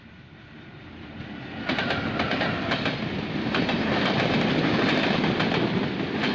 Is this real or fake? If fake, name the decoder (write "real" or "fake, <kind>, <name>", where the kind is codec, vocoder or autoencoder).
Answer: fake, vocoder, BigVGAN v2